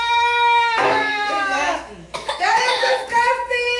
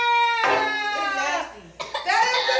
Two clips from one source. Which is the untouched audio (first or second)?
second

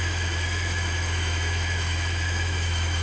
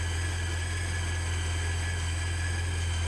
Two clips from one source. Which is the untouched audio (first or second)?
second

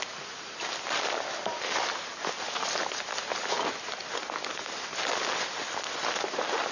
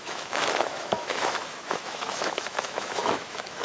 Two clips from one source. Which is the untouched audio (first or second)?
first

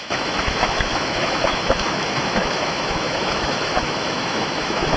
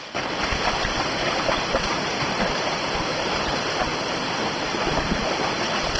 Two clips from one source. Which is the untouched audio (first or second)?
second